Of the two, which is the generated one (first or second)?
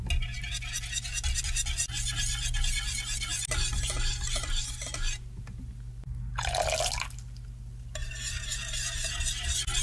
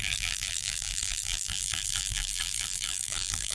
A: second